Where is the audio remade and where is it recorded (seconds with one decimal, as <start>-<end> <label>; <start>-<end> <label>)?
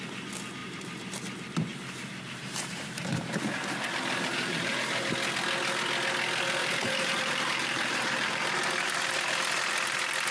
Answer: 0.0-0.6 recorded; 0.6-1.2 remade; 1.2-1.7 recorded; 1.7-5.1 remade; 5.1-6.6 recorded; 6.6-8.5 remade; 8.5-10.3 recorded